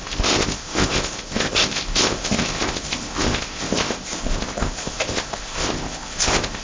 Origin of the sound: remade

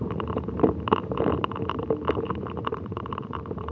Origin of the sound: remade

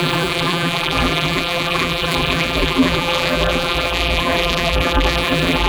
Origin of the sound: remade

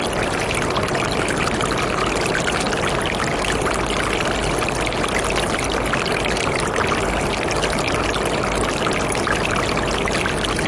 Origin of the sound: recorded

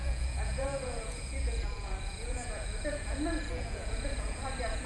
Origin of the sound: remade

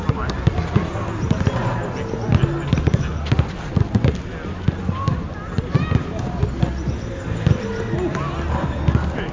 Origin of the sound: recorded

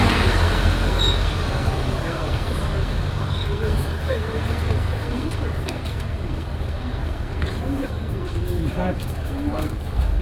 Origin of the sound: remade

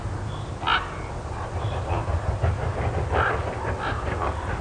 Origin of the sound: recorded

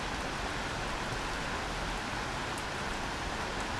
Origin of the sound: recorded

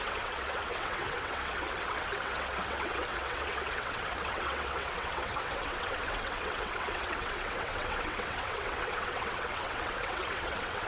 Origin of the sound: remade